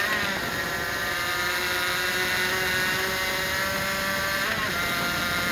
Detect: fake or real real